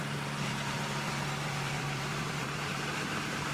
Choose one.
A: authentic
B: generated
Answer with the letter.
B